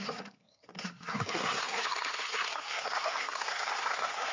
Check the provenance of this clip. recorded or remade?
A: remade